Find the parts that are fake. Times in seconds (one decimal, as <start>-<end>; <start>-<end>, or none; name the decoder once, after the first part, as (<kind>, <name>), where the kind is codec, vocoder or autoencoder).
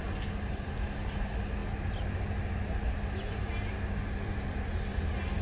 none